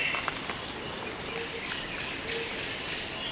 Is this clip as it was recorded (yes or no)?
yes